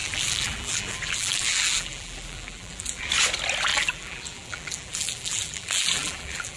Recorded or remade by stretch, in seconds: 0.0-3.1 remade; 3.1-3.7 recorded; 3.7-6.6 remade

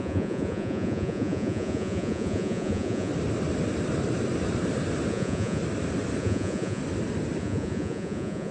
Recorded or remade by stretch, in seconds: 0.0-3.1 remade; 3.1-5.1 recorded; 5.1-5.6 remade; 5.6-6.2 recorded; 6.2-6.8 remade; 6.8-7.4 recorded; 7.4-8.5 remade

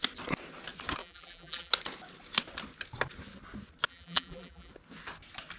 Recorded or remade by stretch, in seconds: 0.0-1.0 recorded; 1.0-1.7 remade; 1.7-3.9 recorded; 3.9-4.7 remade; 4.7-5.6 recorded

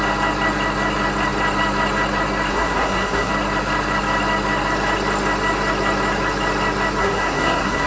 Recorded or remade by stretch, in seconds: 0.0-2.5 recorded; 2.5-3.3 remade; 3.3-7.0 recorded; 7.0-7.9 remade

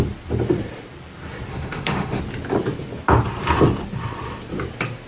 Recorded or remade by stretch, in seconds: 0.0-1.5 recorded; 1.5-2.2 remade; 2.2-5.1 recorded

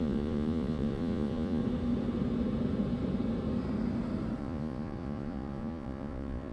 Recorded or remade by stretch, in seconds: 0.0-1.6 remade; 1.6-4.4 recorded; 4.4-6.5 remade

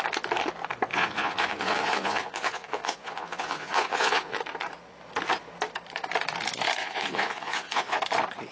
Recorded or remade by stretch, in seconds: 0.0-0.9 recorded; 0.9-4.4 remade; 4.4-6.8 recorded; 6.8-8.0 remade; 8.0-8.5 recorded